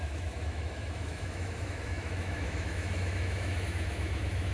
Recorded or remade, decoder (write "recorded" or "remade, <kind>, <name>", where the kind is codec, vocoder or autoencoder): remade, autoencoder, DAC-VAE